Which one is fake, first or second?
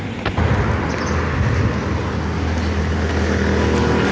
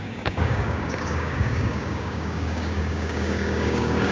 second